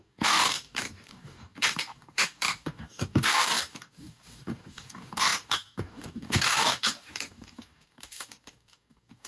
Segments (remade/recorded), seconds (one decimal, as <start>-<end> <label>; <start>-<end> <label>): 0.0-9.3 remade